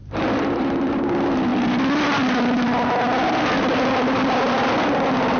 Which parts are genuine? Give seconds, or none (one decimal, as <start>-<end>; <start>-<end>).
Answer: 0.6-1.5; 4.7-5.4